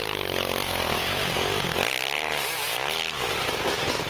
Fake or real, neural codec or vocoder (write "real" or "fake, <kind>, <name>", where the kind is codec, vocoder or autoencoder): real